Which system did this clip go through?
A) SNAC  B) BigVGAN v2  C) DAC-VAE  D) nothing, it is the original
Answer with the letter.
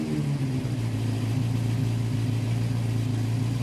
D